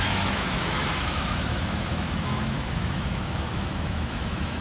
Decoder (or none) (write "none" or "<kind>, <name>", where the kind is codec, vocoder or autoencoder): autoencoder, DAC-VAE